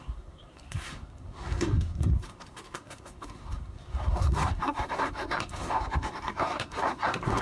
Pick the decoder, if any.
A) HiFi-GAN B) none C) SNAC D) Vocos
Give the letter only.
C